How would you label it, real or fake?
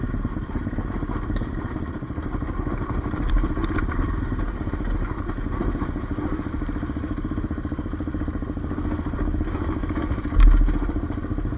real